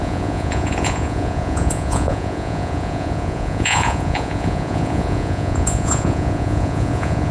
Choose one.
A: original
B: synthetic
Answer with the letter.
B